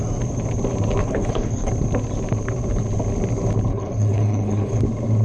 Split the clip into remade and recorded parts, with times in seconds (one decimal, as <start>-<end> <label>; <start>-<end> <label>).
0.0-1.0 recorded; 1.0-1.7 remade; 1.7-3.7 recorded; 3.7-4.8 remade; 4.8-5.2 recorded